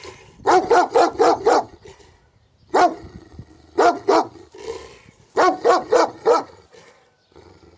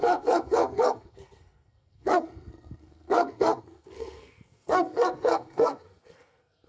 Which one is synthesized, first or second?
second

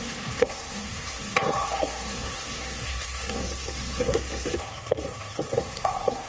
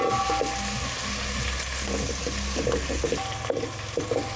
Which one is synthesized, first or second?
first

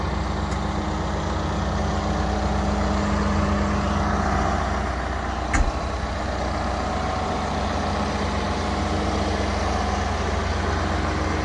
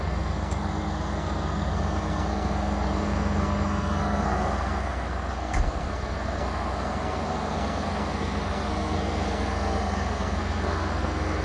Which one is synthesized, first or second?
second